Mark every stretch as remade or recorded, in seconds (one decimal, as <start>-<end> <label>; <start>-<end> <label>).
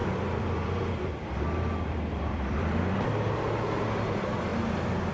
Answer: 0.0-3.1 remade; 3.1-5.1 recorded